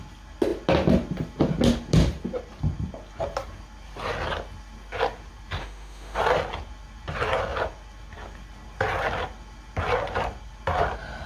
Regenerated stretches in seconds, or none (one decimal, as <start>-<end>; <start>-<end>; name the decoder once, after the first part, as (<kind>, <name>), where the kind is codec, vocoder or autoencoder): 5.6-6.2 (autoencoder, DAC-VAE)